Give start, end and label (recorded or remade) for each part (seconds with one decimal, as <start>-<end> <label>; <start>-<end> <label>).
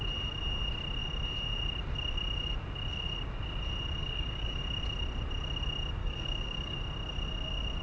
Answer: 0.0-4.0 recorded; 4.0-4.6 remade; 4.6-6.0 recorded; 6.0-6.8 remade; 6.8-7.8 recorded